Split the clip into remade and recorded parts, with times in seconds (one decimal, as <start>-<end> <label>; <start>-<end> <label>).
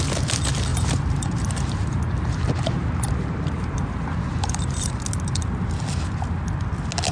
0.0-0.7 recorded; 0.7-5.0 remade; 5.0-7.1 recorded